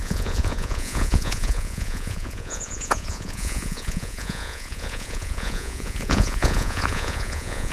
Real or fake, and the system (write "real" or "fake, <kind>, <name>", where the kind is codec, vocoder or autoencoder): fake, vocoder, Vocos